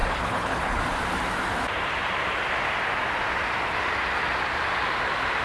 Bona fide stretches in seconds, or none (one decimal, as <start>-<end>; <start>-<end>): 0.8-5.4